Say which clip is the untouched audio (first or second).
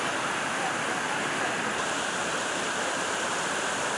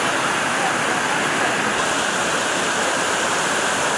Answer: second